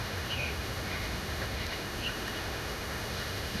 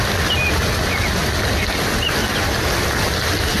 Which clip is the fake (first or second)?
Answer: first